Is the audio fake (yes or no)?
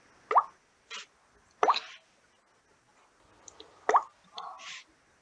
no